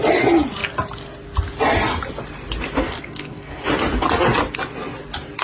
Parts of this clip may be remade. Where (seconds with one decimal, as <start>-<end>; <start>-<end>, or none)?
2.8-3.6